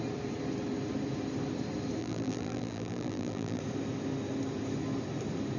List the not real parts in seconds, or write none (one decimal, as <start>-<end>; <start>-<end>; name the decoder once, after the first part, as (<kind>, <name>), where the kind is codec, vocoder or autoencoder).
2.0-3.6 (vocoder, BigVGAN v2)